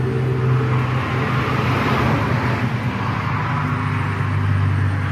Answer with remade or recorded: recorded